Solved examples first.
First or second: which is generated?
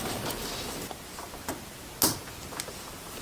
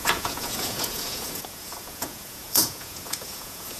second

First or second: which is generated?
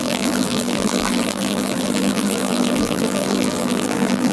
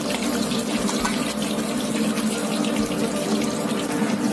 first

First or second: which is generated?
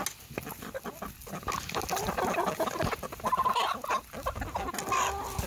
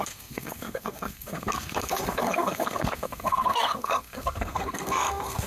second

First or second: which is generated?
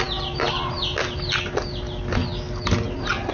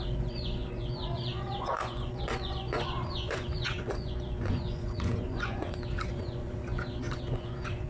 second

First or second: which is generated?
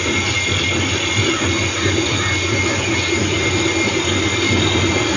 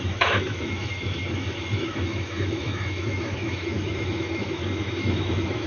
second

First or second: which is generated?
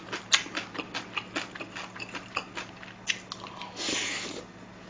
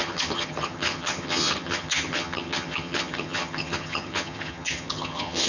second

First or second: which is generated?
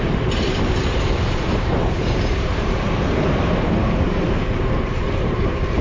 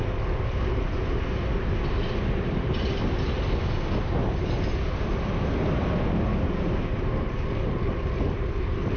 first